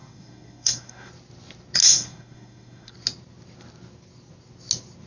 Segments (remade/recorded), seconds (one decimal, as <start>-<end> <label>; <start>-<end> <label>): 0.0-1.1 remade; 1.1-1.8 recorded; 1.8-2.9 remade; 2.9-5.1 recorded